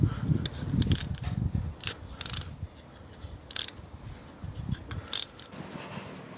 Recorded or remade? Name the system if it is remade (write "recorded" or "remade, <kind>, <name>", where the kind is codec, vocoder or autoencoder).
recorded